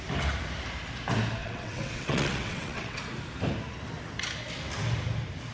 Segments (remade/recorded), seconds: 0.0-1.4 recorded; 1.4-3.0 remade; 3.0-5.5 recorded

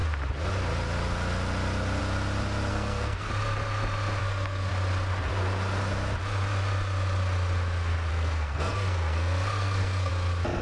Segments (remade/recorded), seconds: 0.0-2.7 recorded; 2.7-3.3 remade; 3.3-4.2 recorded; 4.2-4.7 remade; 4.7-8.1 recorded; 8.1-10.1 remade; 10.1-10.6 recorded

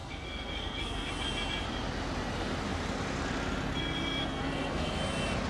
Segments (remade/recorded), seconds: 0.0-1.1 remade; 1.1-4.2 recorded; 4.2-5.0 remade; 5.0-5.5 recorded

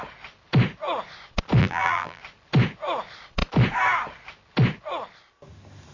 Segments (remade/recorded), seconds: 0.0-1.6 recorded; 1.6-2.2 remade; 2.2-5.9 recorded

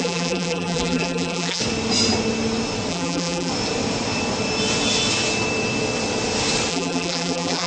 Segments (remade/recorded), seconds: 0.0-1.6 remade; 1.6-2.9 recorded; 2.9-3.5 remade; 3.5-6.7 recorded; 6.7-7.7 remade

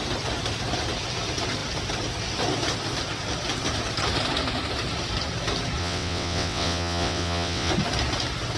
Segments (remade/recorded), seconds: 0.0-5.8 recorded; 5.8-7.7 remade; 7.7-8.6 recorded

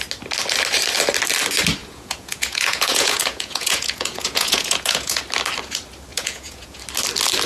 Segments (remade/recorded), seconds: 0.0-1.8 recorded; 1.8-5.2 remade; 5.2-6.1 recorded; 6.1-6.8 remade; 6.8-7.5 recorded

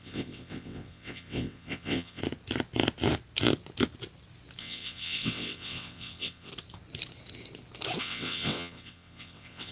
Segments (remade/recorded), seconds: 0.0-2.2 remade; 2.2-4.6 recorded; 4.6-6.5 remade; 6.5-8.0 recorded; 8.0-9.7 remade